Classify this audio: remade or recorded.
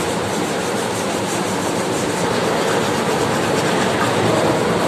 remade